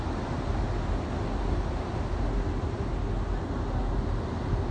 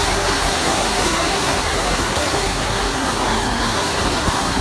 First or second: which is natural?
first